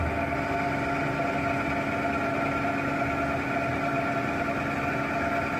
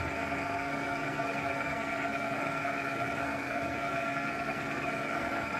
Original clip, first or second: first